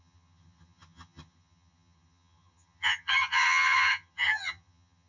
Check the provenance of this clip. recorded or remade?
remade